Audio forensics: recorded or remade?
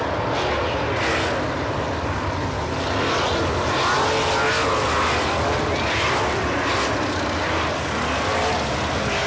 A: recorded